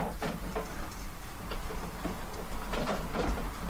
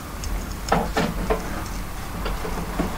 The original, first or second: second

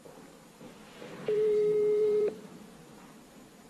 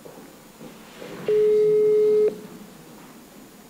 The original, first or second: second